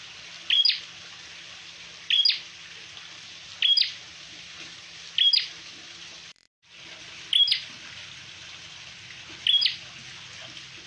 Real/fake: real